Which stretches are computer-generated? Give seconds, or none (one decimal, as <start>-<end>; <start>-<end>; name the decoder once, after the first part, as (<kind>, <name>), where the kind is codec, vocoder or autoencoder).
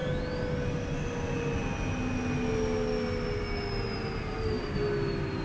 none